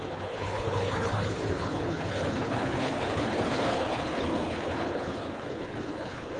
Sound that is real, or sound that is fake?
fake